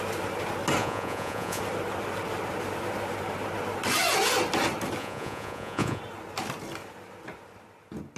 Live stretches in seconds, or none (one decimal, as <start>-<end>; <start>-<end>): 0.0-0.8; 1.6-5.0; 6.0-8.2